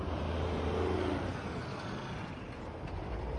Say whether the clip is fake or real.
real